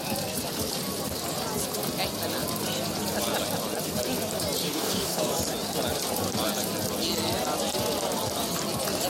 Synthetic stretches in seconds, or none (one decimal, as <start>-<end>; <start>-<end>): 4.6-5.3